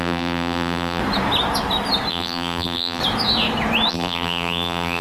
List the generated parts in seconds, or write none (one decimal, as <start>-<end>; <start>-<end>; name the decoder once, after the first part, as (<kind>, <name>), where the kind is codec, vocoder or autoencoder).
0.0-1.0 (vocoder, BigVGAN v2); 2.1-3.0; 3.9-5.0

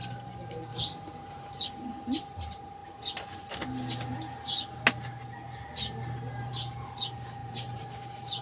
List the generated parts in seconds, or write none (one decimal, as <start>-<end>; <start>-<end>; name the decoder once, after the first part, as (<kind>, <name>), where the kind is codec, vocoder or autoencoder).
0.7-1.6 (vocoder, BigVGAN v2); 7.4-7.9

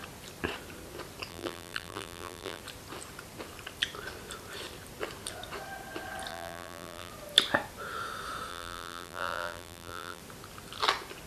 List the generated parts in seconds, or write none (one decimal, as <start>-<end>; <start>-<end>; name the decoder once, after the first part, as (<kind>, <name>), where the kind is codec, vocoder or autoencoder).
1.3-2.6 (vocoder, BigVGAN v2); 6.3-7.1; 8.5-10.2

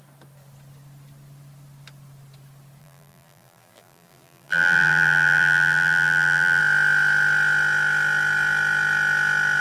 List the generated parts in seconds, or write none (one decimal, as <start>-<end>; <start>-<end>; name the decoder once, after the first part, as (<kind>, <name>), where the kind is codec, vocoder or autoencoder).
2.8-6.6 (vocoder, BigVGAN v2)